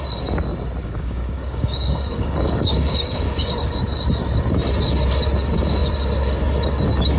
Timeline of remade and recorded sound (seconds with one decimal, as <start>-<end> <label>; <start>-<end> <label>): 0.0-0.8 recorded; 0.8-3.8 remade; 3.8-7.2 recorded